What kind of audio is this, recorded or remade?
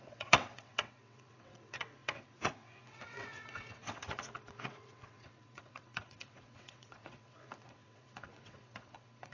remade